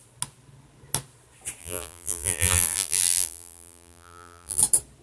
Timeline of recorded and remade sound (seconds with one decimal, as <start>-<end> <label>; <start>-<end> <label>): 0.0-1.6 recorded; 1.6-4.6 remade; 4.6-5.0 recorded